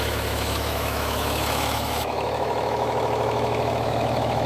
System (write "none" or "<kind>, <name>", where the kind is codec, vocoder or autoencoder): autoencoder, DAC-VAE